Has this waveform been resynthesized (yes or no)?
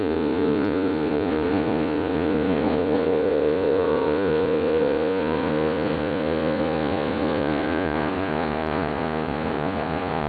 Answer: yes